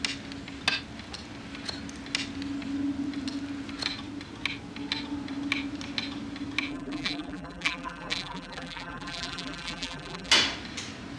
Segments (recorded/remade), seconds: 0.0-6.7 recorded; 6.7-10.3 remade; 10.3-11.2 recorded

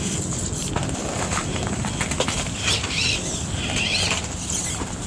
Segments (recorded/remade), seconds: 0.0-0.8 recorded; 0.8-3.4 remade; 3.4-5.1 recorded

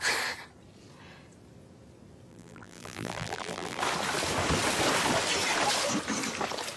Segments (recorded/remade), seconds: 0.0-2.3 recorded; 2.3-3.8 remade; 3.8-6.8 recorded